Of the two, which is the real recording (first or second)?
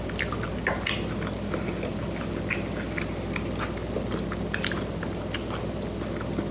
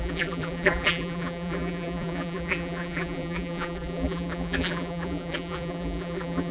first